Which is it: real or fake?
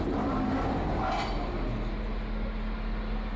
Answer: real